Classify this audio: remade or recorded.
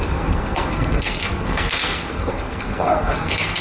remade